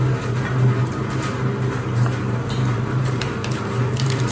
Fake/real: fake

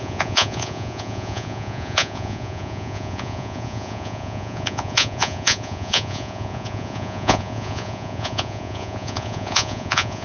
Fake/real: fake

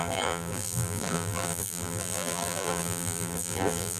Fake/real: fake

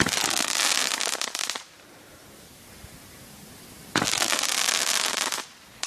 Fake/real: real